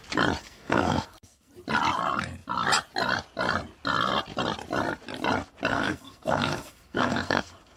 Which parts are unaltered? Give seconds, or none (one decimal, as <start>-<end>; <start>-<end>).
0.0-0.4; 1.5-5.7